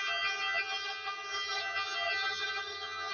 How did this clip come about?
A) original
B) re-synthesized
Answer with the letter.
B